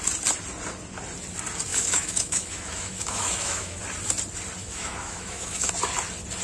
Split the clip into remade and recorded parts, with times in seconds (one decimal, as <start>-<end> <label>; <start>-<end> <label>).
0.0-1.7 recorded; 1.7-3.8 remade; 3.8-4.6 recorded; 4.6-5.7 remade; 5.7-6.4 recorded